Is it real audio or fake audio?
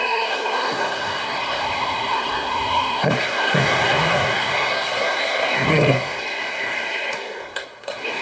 fake